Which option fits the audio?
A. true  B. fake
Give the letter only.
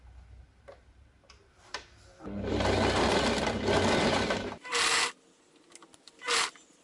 A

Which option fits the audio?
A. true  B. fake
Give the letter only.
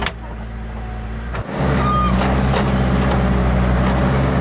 A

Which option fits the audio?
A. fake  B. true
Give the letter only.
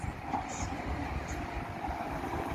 B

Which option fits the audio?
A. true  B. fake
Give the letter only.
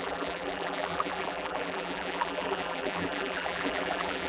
B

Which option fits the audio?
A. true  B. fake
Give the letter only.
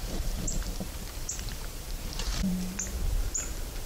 B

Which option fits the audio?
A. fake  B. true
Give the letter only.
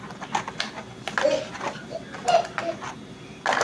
B